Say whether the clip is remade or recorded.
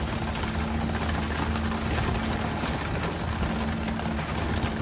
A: recorded